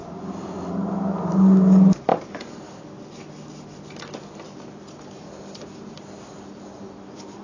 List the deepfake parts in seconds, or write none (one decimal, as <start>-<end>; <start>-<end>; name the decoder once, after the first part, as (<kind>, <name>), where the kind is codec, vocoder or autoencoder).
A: 2.1-2.8 (vocoder, BigVGAN v2)